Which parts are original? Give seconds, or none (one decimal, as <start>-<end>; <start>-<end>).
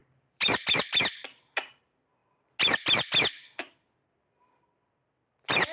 0.8-5.7